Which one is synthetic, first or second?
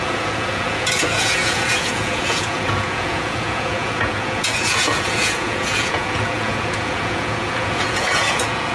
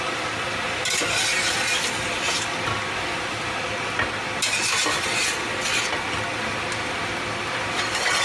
first